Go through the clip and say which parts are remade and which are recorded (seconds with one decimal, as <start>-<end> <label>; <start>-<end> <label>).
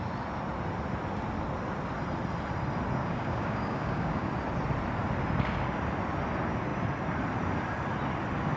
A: 0.0-3.0 recorded; 3.0-4.3 remade; 4.3-8.6 recorded